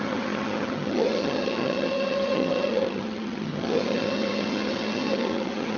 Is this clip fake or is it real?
fake